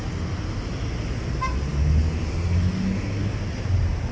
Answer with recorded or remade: recorded